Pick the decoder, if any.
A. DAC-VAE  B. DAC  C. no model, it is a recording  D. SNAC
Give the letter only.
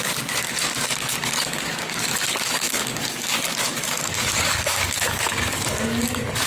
B